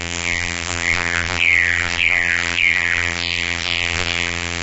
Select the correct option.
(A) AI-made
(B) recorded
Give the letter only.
A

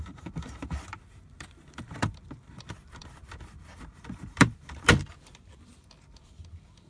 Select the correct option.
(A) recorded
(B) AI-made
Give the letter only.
B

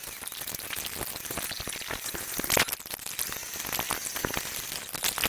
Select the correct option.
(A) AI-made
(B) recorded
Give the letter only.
A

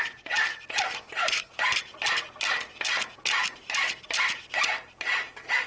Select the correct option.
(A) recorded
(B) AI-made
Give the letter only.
A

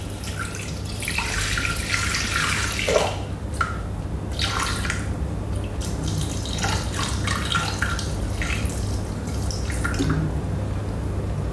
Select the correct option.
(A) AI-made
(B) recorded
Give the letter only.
B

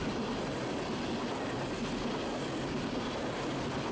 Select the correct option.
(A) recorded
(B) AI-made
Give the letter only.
A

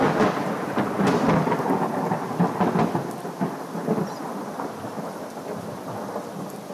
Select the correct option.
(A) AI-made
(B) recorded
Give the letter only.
B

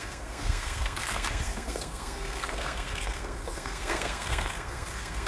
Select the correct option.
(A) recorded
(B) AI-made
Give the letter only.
B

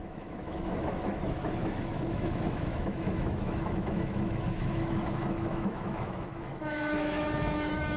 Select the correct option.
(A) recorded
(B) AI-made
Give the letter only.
B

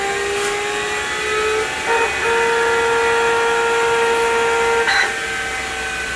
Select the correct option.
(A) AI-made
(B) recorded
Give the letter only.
B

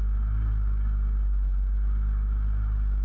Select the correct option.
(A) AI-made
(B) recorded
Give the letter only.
B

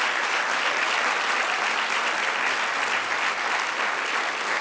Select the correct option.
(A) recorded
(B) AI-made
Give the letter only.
A